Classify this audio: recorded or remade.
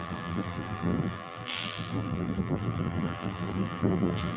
remade